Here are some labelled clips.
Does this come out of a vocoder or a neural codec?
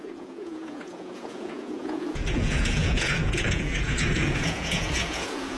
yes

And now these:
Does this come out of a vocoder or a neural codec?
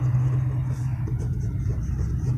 no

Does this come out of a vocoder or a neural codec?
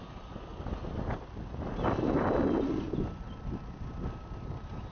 no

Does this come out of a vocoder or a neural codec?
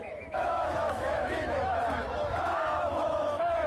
yes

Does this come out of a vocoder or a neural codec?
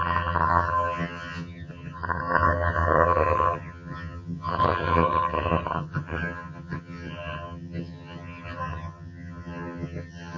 yes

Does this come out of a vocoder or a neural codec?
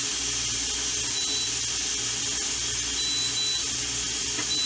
no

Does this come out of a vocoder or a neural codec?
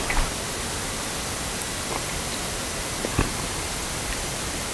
no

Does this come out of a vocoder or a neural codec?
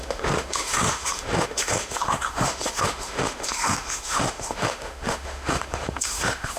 yes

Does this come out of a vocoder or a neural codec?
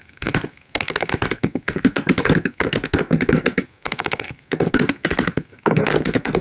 yes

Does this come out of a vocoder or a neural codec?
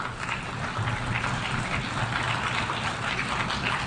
no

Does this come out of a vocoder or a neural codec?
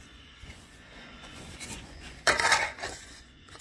yes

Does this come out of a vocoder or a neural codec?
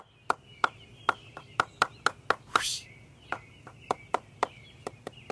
no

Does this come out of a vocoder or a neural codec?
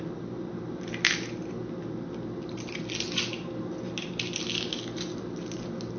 no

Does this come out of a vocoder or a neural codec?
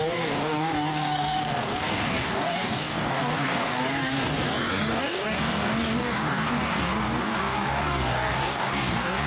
yes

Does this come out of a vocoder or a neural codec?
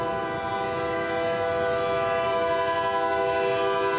no